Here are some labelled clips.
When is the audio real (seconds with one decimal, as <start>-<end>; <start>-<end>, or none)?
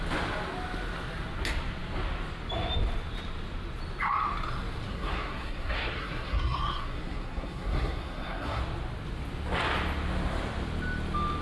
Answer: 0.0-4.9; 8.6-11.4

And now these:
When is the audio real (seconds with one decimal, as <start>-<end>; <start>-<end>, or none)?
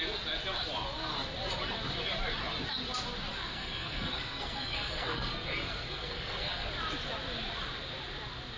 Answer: 0.0-3.3; 6.7-8.6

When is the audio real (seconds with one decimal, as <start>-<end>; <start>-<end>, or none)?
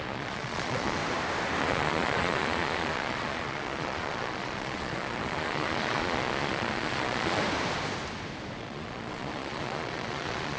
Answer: 1.0-1.6; 7.4-8.6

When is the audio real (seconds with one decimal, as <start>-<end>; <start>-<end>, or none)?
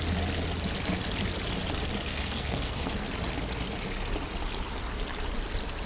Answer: 0.0-2.1; 3.1-5.9